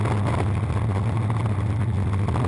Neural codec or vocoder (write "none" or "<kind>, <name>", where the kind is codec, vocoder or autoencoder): none